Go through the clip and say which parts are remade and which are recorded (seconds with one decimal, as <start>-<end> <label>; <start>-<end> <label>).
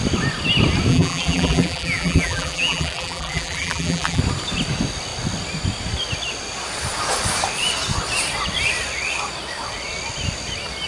0.0-0.9 recorded; 0.9-4.2 remade; 4.2-10.9 recorded